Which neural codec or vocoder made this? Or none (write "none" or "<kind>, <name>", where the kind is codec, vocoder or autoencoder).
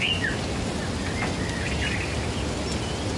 none